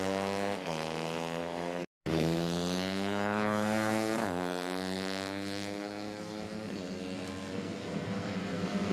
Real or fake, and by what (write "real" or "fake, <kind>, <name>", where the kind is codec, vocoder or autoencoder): fake, codec, SNAC